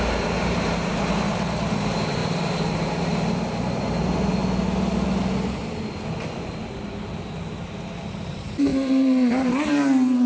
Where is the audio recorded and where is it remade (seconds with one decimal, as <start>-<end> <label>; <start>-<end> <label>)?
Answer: 0.0-2.2 remade; 2.2-3.6 recorded; 3.6-4.4 remade; 4.4-8.1 recorded; 8.1-10.3 remade